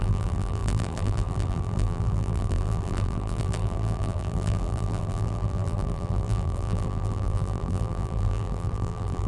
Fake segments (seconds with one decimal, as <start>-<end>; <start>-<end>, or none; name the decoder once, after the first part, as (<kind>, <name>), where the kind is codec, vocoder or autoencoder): 0.0-9.3 (vocoder, BigVGAN v2)